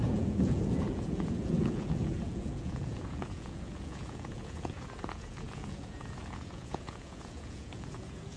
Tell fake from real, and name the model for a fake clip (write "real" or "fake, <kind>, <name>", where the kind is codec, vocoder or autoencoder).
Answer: fake, vocoder, Vocos